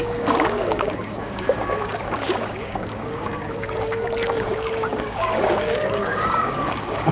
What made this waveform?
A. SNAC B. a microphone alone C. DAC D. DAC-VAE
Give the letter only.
C